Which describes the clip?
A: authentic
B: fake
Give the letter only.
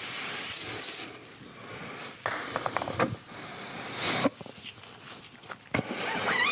B